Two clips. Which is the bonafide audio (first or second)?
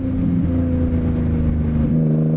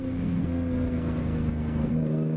first